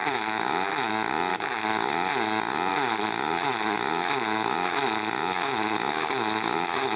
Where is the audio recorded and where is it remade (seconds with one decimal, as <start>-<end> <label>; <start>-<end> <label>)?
0.0-0.9 remade; 0.9-1.3 recorded; 1.3-2.1 remade; 2.1-2.7 recorded; 2.7-7.0 remade